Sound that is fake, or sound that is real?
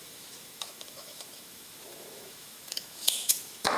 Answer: fake